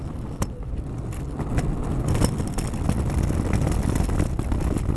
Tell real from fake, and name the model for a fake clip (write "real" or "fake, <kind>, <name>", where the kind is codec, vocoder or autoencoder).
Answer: real